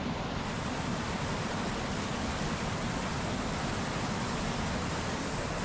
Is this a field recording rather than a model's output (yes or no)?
yes